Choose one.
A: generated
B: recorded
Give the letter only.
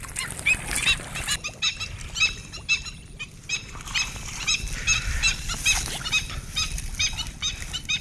B